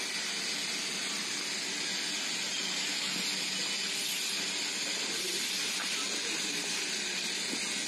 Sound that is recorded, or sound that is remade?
recorded